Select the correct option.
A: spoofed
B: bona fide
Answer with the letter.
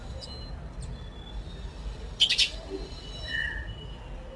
B